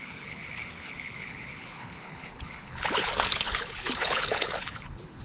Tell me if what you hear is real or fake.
fake